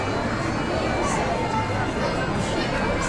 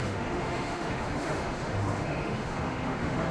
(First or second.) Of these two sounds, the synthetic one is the second